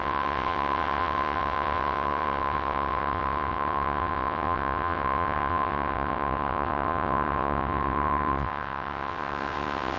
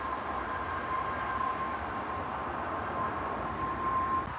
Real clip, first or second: second